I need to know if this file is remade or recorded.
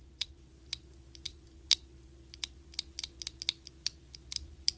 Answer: recorded